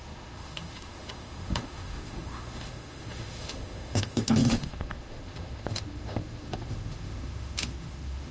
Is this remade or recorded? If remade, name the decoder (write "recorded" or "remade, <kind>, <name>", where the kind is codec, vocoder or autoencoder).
remade, autoencoder, DAC-VAE